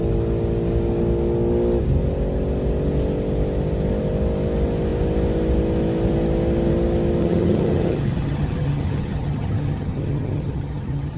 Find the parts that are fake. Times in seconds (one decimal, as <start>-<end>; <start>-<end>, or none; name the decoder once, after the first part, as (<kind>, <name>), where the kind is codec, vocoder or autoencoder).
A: 7.2-11.2 (vocoder, HiFi-GAN)